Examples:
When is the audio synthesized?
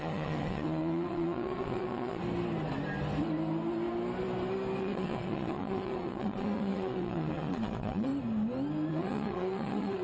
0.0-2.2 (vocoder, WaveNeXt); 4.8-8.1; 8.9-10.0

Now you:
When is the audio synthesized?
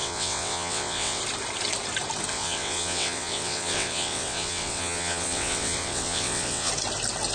0.0-1.2 (vocoder, WaveNeXt); 2.3-6.7